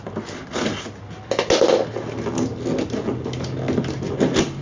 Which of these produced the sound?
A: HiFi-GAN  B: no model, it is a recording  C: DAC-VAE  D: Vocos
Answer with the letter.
B